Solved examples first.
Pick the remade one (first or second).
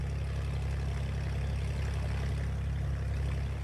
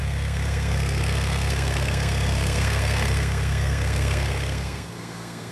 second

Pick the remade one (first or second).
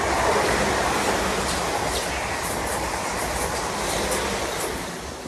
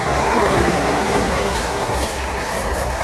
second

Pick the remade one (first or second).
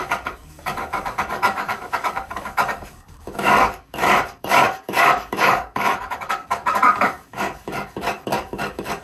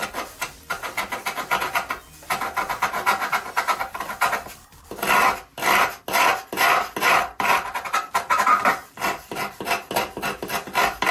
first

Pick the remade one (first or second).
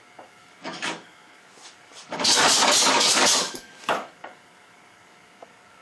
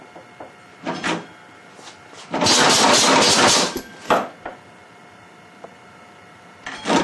first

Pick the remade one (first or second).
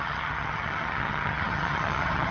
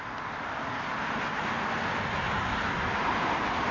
first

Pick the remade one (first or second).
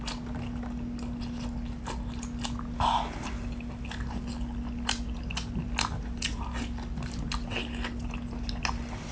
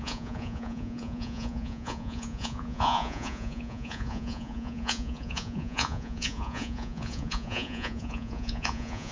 second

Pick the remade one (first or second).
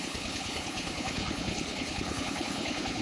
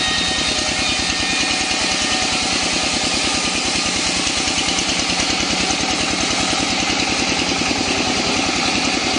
first